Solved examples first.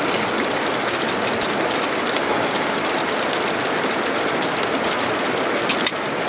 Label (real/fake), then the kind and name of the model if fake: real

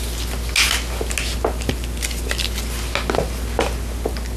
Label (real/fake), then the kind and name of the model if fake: real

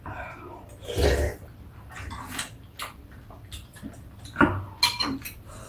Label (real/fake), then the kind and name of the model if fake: real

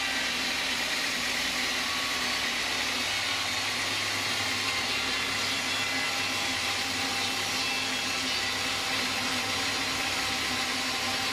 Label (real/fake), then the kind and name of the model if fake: real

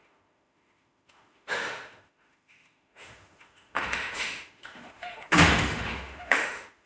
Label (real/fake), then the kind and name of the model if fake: fake, autoencoder, DAC-VAE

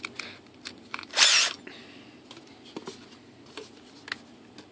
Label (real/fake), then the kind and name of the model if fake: real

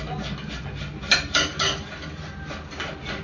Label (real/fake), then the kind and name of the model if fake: real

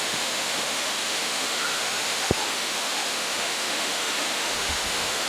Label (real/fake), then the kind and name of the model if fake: fake, autoencoder, DAC-VAE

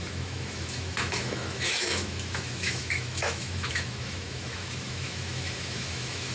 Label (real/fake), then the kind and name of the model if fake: fake, autoencoder, DAC-VAE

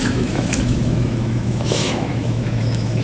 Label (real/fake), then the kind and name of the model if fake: fake, autoencoder, DAC-VAE